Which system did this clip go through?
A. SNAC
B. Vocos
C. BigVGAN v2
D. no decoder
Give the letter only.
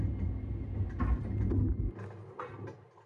D